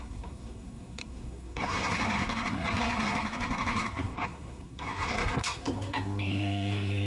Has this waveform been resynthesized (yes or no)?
yes